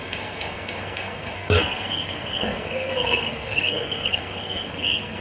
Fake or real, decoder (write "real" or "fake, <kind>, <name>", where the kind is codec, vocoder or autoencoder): fake, codec, SNAC